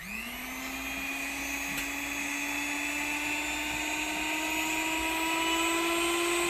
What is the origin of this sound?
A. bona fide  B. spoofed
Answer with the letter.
A